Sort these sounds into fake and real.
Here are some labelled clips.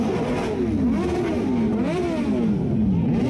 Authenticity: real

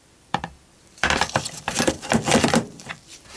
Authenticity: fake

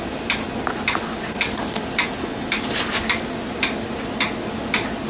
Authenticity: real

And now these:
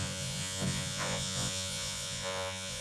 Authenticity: fake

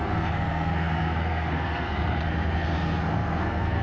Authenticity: fake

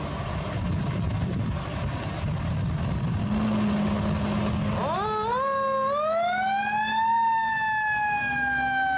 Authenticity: real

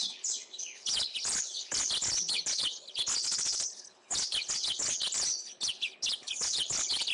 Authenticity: fake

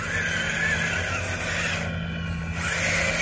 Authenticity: real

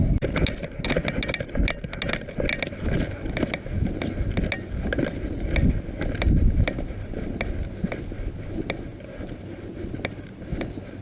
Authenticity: real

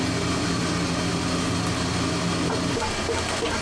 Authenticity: real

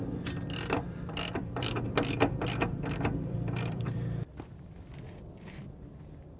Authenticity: fake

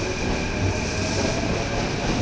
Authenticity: fake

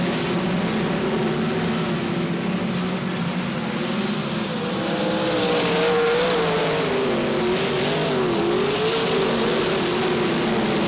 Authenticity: real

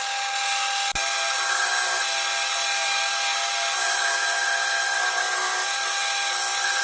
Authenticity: real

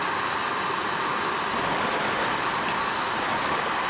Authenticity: real